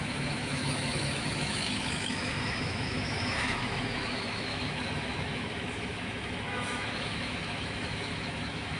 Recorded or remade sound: remade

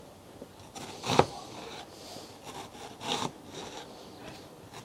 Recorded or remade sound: recorded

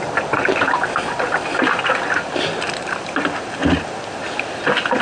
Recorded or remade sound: recorded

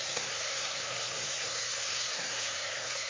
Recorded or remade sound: remade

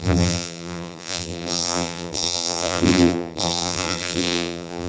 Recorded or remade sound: remade